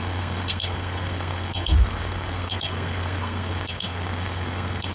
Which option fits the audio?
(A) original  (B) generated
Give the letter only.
B